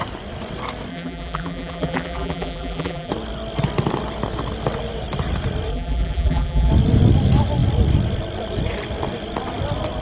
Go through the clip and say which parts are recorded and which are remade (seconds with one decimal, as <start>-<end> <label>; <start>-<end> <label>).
0.0-0.9 recorded; 0.9-3.1 remade; 3.1-5.7 recorded; 5.7-6.7 remade; 6.7-10.0 recorded